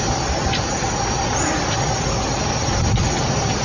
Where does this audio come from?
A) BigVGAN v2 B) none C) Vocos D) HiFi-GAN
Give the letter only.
B